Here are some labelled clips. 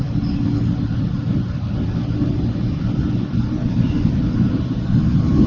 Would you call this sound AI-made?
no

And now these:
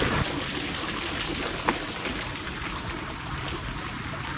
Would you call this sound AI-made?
no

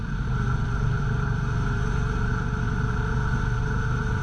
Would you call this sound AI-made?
yes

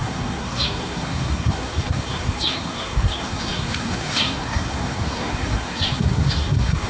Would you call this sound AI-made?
yes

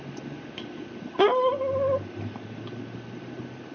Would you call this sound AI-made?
no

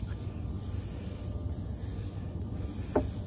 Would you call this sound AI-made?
no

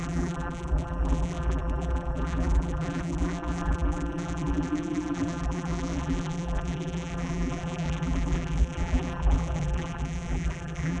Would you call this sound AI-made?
yes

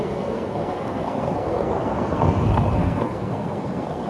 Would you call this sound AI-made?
yes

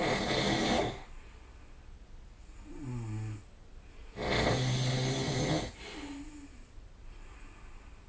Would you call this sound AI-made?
no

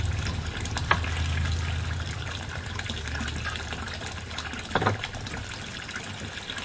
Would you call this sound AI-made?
no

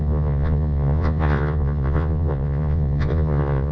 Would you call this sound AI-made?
yes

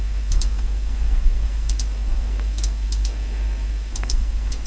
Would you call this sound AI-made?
yes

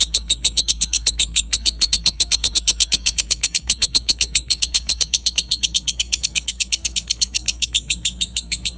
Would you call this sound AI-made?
yes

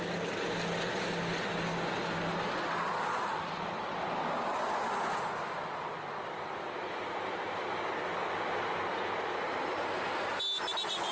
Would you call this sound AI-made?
no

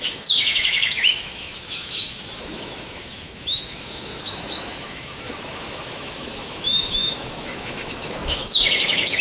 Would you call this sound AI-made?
yes